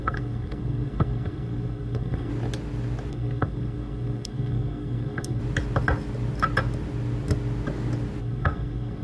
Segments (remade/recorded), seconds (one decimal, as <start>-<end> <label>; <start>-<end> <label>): 0.0-2.3 remade; 2.3-3.1 recorded; 3.1-5.4 remade; 5.4-8.2 recorded; 8.2-9.0 remade